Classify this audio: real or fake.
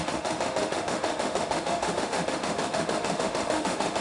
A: fake